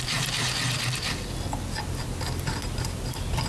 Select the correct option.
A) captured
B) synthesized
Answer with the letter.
A